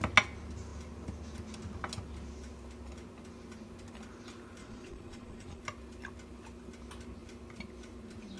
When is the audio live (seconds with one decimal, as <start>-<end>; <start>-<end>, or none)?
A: 0.0-4.6; 5.6-8.4